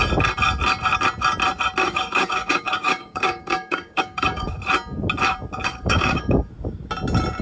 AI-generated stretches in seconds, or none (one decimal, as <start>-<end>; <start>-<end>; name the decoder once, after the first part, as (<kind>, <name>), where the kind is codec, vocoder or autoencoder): 1.8-4.6 (codec, DAC); 5.7-6.5